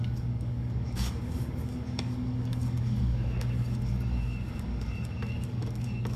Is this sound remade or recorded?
remade